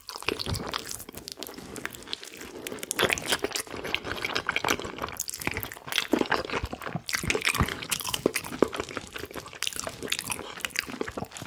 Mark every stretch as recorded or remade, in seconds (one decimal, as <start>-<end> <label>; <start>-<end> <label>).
0.0-7.7 recorded; 7.7-8.4 remade; 8.4-11.5 recorded